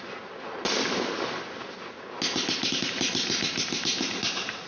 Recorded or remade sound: recorded